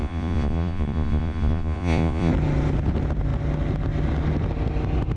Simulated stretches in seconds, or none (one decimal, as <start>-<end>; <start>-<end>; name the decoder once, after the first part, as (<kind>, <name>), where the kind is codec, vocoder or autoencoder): 0.0-2.3 (vocoder, Vocos)